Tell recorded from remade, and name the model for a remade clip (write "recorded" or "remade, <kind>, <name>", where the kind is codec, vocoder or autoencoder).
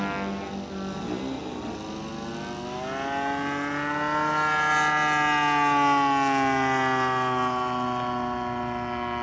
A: recorded